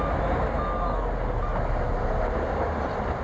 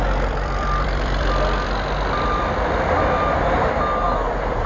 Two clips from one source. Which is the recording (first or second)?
first